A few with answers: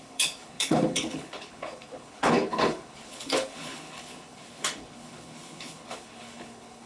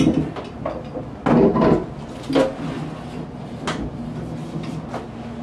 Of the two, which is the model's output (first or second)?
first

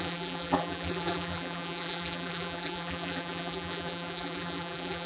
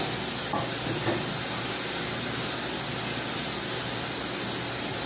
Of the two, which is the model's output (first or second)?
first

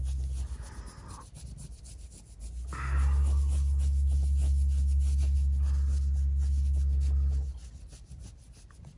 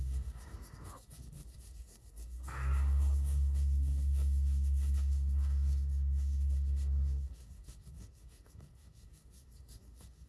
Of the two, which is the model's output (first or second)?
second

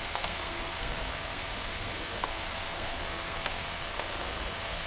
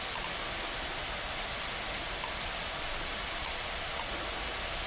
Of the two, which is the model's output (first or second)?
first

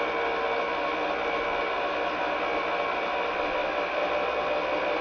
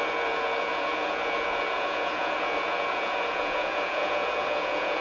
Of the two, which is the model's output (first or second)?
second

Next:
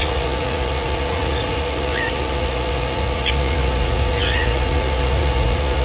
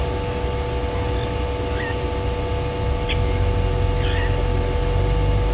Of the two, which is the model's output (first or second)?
first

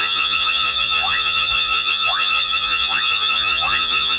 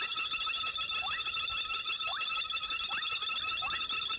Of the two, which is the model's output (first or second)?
first